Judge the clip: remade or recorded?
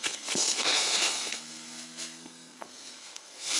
remade